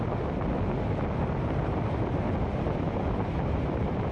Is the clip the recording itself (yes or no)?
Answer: yes